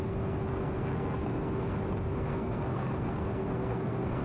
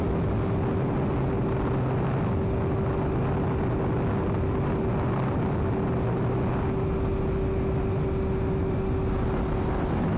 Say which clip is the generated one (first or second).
first